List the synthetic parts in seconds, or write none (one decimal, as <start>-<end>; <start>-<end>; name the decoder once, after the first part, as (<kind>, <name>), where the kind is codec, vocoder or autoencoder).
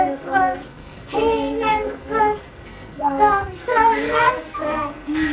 0.0-5.3 (codec, SNAC)